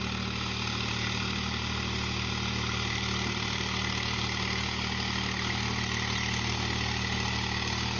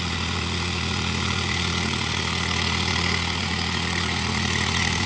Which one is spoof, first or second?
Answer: second